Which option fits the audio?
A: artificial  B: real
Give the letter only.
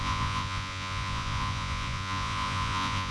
A